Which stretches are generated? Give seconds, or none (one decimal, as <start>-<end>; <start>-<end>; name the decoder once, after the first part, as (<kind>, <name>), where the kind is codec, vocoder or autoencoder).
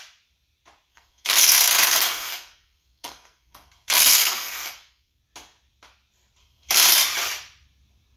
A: 0.9-5.2 (codec, SNAC); 6.4-6.9